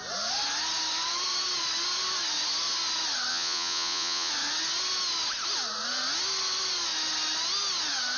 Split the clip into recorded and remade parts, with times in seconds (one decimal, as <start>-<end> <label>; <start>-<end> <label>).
0.0-3.3 recorded; 3.3-4.3 remade; 4.3-8.2 recorded